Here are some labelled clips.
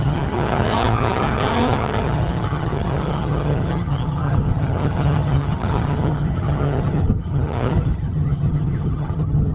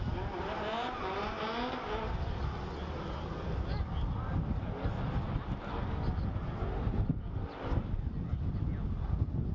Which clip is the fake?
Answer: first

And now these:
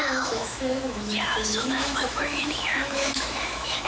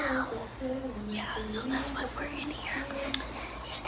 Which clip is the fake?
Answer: first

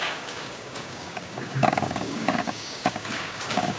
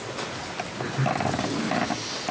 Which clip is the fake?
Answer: first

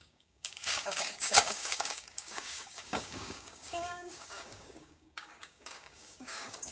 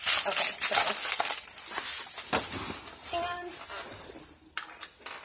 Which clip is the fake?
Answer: first